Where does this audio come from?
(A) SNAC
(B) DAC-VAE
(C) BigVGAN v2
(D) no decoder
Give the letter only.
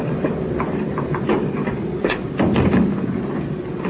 C